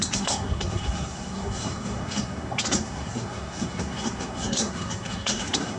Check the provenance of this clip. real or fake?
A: fake